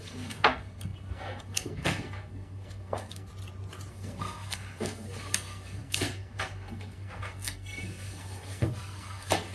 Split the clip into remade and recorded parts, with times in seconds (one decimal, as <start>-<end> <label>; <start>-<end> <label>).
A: 0.0-3.3 remade; 3.3-3.9 recorded; 3.9-9.5 remade